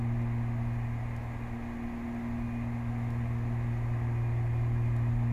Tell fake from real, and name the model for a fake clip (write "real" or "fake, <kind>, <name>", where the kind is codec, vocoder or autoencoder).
real